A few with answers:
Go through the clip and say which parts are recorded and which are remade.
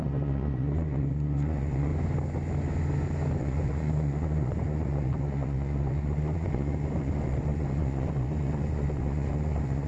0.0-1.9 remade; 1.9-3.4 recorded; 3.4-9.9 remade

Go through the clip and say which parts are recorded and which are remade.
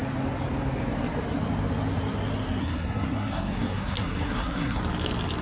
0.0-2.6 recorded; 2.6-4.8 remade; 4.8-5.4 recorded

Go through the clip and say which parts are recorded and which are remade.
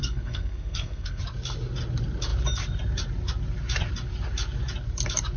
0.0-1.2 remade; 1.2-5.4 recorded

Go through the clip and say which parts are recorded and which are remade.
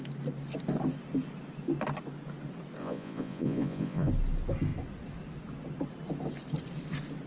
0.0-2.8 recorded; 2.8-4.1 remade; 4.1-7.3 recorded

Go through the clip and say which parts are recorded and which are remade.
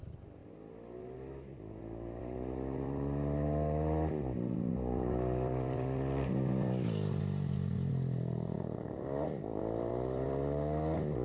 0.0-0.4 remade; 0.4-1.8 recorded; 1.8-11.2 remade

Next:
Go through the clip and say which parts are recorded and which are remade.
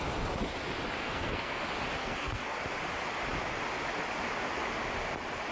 0.0-1.0 recorded; 1.0-1.6 remade; 1.6-2.0 recorded; 2.0-2.6 remade; 2.6-5.5 recorded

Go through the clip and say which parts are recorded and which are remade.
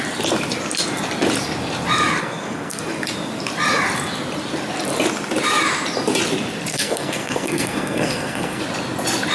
0.0-2.2 recorded; 2.2-2.8 remade; 2.8-6.7 recorded; 6.7-8.6 remade; 8.6-9.3 recorded